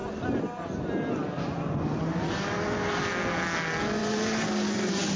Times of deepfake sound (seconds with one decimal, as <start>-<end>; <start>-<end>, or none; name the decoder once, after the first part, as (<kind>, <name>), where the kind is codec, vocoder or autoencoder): 4.0-5.2 (vocoder, BigVGAN v2)